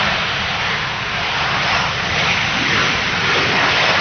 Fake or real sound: real